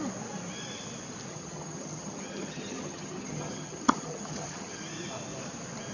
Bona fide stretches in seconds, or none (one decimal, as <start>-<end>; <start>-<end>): 0.0-1.3; 4.8-5.9